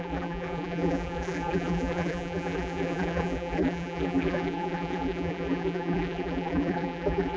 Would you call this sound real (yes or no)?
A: no